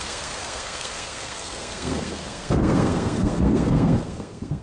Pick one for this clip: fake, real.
fake